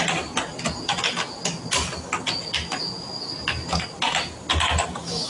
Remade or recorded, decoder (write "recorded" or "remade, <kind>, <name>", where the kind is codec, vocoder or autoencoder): recorded